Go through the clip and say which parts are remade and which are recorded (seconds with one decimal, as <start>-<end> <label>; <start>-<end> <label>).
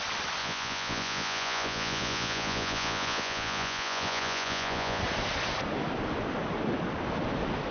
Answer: 0.0-0.4 recorded; 0.4-5.0 remade; 5.0-7.7 recorded